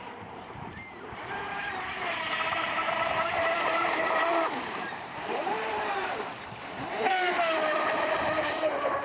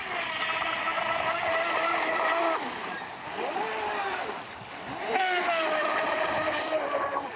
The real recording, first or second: second